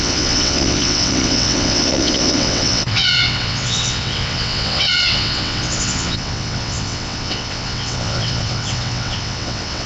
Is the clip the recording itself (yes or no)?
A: no